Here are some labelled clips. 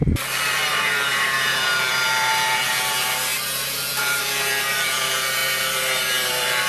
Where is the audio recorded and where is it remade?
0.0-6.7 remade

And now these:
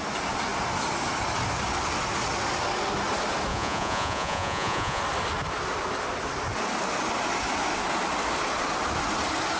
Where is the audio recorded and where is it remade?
0.0-3.5 recorded; 3.5-5.0 remade; 5.0-9.6 recorded

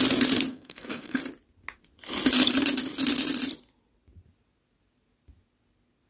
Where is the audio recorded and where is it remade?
0.0-0.5 recorded; 0.5-1.2 remade; 1.2-6.1 recorded

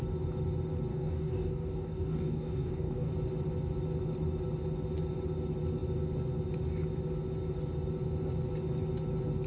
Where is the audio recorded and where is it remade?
0.0-0.9 recorded; 0.9-3.1 remade; 3.1-9.5 recorded

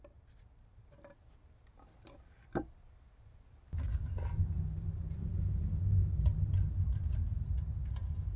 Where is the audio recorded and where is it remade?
0.0-8.4 recorded